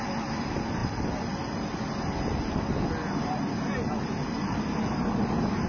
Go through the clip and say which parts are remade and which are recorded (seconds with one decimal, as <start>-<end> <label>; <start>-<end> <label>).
0.0-5.7 recorded